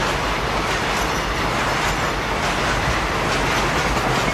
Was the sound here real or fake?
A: real